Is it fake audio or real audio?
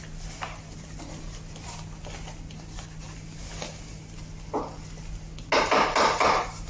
real